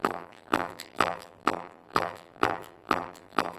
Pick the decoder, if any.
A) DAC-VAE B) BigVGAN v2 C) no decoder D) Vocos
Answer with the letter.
B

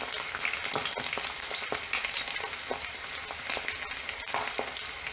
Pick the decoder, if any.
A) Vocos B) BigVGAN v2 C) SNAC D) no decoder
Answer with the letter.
D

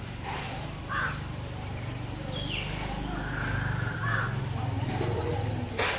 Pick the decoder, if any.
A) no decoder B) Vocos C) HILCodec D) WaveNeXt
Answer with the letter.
A